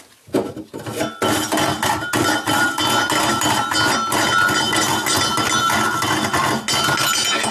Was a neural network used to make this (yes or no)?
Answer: no